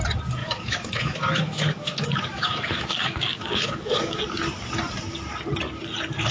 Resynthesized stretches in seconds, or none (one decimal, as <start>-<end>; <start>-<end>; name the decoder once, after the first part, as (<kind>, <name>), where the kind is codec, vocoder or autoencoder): 0.4-4.2 (autoencoder, DAC-VAE)